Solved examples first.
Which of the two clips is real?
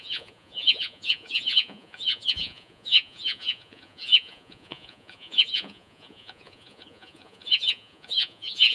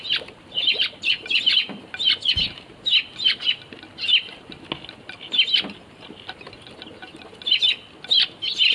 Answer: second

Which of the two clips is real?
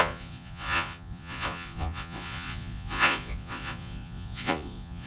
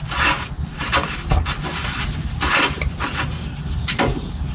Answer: second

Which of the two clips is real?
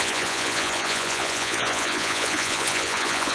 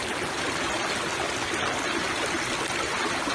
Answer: second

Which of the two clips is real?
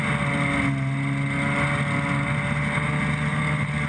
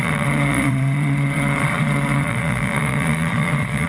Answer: first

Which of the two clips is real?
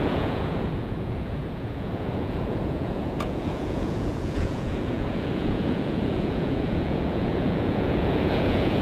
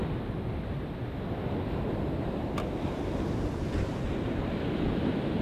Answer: second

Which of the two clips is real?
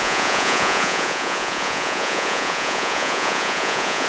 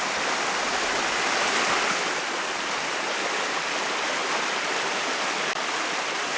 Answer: second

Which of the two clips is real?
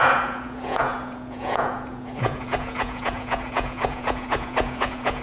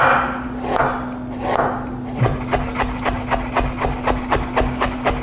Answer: second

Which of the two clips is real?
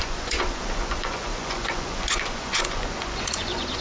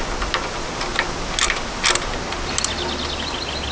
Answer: second